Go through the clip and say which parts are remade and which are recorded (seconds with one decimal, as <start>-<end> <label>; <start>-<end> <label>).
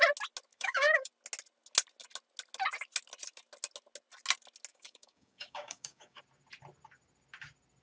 0.0-0.5 recorded; 0.5-1.1 remade; 1.1-4.7 recorded; 4.7-6.2 remade; 6.2-7.8 recorded